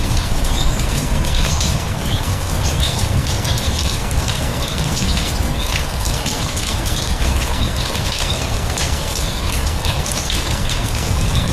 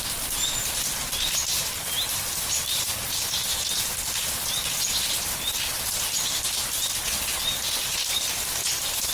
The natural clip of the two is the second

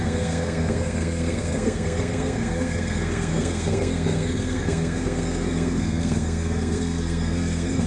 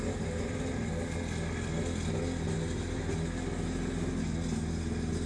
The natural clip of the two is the second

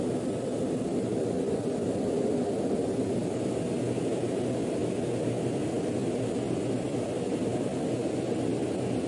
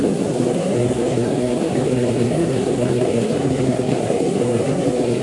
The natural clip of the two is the first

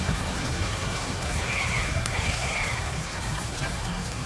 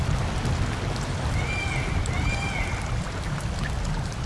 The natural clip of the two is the second